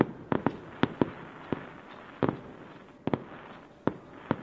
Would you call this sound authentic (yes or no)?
yes